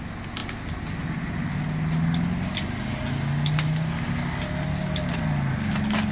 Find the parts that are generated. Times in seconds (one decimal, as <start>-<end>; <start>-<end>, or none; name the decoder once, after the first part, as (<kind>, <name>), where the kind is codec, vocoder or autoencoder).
none